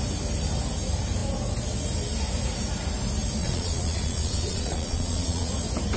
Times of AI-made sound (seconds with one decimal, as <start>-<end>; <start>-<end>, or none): 3.4-5.5

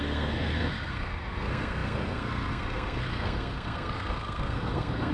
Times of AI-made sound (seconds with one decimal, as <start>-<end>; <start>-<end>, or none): 0.0-5.1

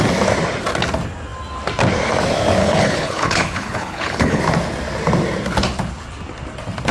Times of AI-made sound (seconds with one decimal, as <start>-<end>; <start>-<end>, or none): 2.6-4.4

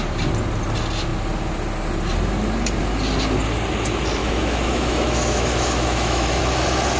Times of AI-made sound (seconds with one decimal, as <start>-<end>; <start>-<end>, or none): 4.2-6.4

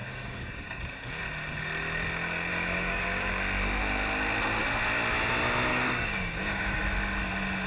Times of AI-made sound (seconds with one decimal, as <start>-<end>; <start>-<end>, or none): 0.0-0.8; 2.5-3.3; 5.7-6.8

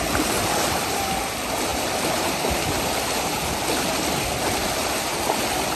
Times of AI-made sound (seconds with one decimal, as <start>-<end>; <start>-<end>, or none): none

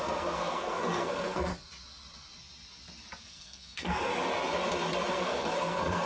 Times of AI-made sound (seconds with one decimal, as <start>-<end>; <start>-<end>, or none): 0.0-1.5; 3.2-4.1; 5.1-6.1

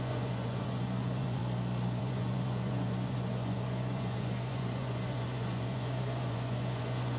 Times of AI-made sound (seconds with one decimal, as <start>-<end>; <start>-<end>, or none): 0.0-1.4; 2.0-7.2